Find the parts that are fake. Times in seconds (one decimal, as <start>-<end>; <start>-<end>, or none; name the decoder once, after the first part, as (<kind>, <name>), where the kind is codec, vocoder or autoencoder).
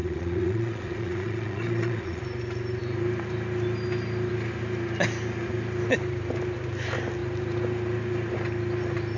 0.0-2.2 (vocoder, Vocos)